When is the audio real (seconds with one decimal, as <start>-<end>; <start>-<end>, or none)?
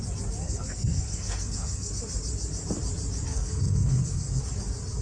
0.0-0.4; 1.9-3.3; 4.4-5.0